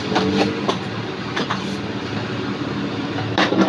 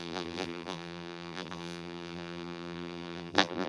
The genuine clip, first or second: first